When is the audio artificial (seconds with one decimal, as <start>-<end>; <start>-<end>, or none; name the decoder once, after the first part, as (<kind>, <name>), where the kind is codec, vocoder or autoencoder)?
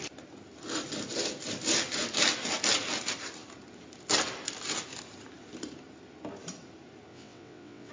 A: 7.1-7.9 (vocoder, WaveNeXt)